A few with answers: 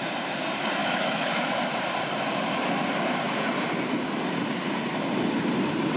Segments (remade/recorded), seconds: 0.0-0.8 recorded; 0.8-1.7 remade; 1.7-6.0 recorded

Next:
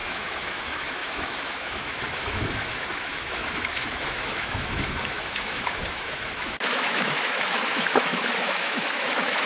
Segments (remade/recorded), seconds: 0.0-9.5 remade

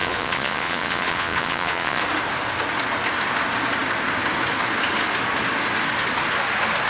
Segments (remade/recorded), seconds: 0.0-2.0 remade; 2.0-6.9 recorded

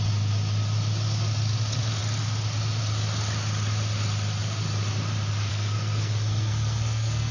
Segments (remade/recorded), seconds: 0.0-5.5 recorded; 5.5-7.3 remade

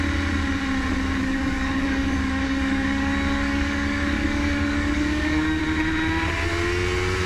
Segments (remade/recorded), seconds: 0.0-1.2 recorded; 1.2-5.6 remade; 5.6-7.3 recorded